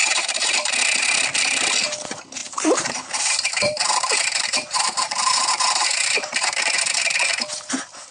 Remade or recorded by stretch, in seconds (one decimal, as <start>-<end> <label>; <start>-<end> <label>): 0.0-0.7 remade; 0.7-2.4 recorded; 2.4-7.2 remade; 7.2-8.1 recorded